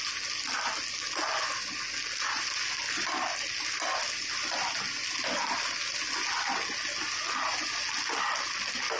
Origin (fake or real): real